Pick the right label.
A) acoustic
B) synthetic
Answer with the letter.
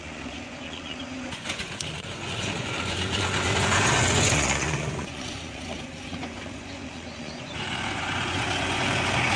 B